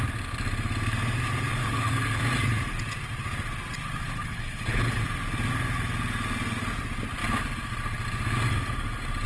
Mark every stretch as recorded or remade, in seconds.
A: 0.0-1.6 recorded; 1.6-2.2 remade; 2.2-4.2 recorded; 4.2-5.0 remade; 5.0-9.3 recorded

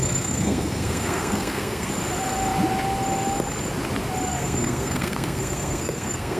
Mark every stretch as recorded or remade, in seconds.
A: 0.0-1.9 remade; 1.9-4.3 recorded; 4.3-6.4 remade

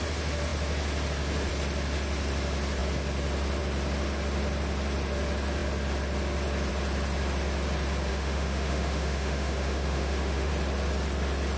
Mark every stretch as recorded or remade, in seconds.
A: 0.0-8.1 recorded; 8.1-10.5 remade; 10.5-11.6 recorded